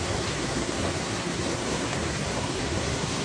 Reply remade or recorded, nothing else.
remade